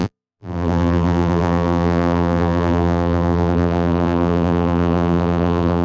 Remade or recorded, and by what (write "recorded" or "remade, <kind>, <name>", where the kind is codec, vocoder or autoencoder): remade, vocoder, BigVGAN v2